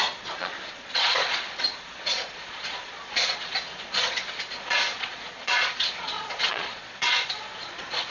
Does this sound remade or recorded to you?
remade